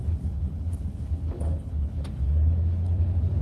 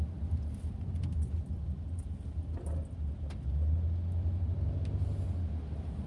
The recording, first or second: second